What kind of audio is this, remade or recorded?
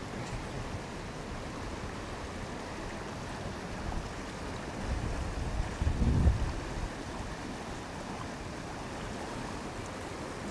recorded